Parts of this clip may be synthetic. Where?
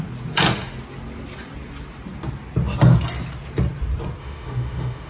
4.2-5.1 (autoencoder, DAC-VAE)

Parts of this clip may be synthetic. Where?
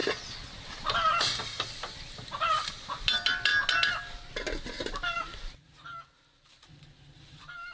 1.4-3.5 (vocoder, BigVGAN v2); 7.2-7.7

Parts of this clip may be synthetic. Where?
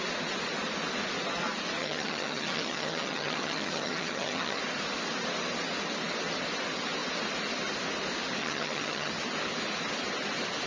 1.8-4.6 (vocoder, HiFi-GAN); 8.4-9.1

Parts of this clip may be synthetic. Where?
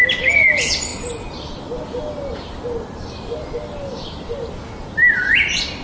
none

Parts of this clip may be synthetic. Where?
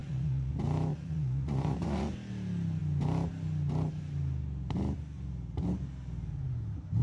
0.0-0.5 (vocoder, Vocos); 0.9-2.1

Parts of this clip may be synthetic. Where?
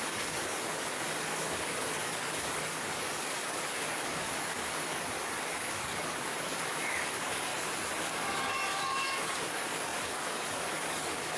0.0-7.5 (codec, DAC); 8.0-11.4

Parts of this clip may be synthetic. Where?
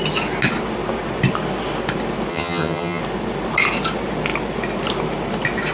2.3-3.0 (vocoder, HiFi-GAN)